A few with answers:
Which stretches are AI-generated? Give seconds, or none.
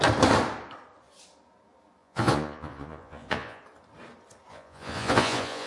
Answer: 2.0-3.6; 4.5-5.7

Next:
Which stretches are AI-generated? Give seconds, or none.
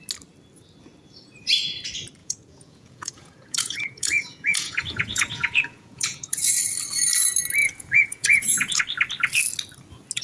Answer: 2.2-6.5; 7.6-8.8